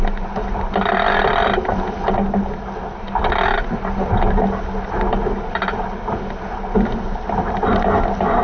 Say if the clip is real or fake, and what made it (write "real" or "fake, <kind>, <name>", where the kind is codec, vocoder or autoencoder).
real